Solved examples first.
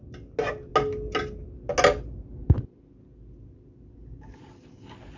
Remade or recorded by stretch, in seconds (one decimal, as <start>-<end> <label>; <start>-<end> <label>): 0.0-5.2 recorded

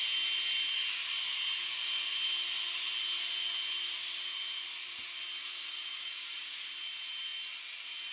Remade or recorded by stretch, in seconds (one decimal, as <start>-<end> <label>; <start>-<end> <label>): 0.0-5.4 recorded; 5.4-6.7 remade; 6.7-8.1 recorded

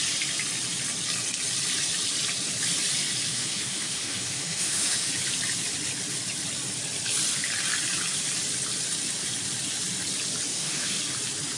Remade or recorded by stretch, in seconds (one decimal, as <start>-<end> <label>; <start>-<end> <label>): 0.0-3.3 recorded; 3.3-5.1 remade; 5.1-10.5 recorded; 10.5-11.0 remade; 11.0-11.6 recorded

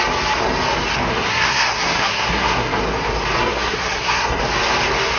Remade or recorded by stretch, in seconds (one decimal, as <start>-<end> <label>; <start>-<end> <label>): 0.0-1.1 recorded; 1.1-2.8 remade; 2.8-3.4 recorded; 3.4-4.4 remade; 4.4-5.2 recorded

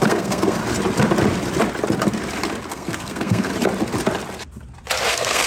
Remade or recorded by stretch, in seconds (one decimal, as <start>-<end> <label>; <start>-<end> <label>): 0.0-0.6 remade; 0.6-2.7 recorded; 2.7-3.5 remade; 3.5-5.1 recorded; 5.1-5.5 remade